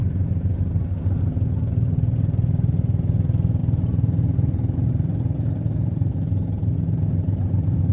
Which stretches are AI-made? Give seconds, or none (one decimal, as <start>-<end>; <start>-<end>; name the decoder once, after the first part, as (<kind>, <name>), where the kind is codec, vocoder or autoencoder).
3.6-7.9 (vocoder, BigVGAN v2)